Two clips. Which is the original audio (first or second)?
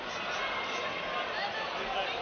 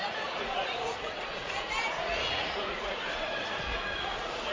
first